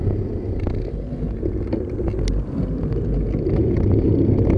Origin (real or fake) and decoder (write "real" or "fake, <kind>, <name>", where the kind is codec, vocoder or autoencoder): real